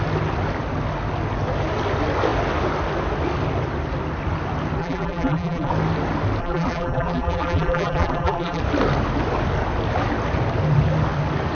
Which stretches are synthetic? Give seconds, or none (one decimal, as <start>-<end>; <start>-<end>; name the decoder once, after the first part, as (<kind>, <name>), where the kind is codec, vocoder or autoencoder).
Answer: 4.8-5.7 (vocoder, BigVGAN v2); 6.4-8.6